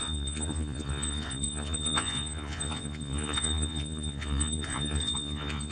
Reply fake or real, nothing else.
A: fake